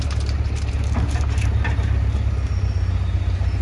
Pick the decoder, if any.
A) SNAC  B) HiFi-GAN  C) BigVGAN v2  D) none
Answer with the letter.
C